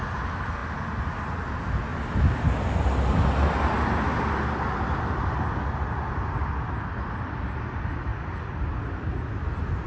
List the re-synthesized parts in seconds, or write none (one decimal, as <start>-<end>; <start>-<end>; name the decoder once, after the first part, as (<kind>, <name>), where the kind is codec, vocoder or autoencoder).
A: none